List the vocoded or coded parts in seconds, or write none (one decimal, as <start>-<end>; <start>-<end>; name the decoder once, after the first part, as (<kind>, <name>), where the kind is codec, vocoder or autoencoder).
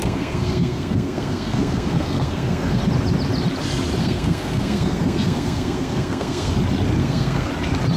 0.0-2.8 (codec, SNAC); 4.0-6.5; 7.0-7.5